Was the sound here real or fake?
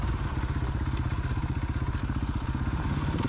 real